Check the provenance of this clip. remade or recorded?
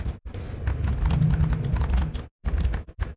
recorded